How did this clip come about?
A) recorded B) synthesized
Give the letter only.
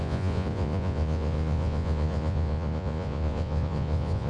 B